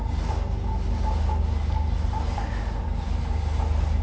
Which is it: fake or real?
real